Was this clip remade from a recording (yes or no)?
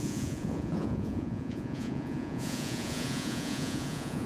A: yes